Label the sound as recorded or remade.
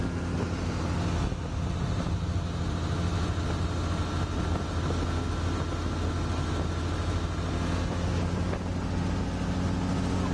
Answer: recorded